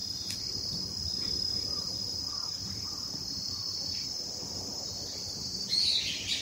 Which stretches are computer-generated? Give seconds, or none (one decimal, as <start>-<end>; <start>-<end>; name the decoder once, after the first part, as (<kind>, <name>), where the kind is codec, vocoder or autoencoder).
none